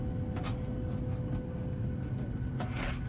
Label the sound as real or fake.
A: real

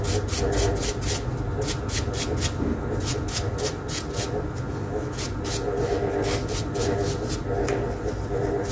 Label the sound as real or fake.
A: real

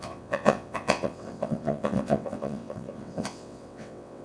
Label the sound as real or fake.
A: fake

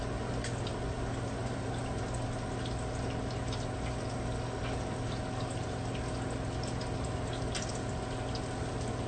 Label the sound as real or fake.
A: real